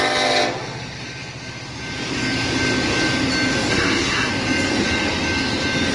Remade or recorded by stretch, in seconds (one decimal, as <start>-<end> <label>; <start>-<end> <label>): 0.0-3.7 recorded; 3.7-4.3 remade; 4.3-5.9 recorded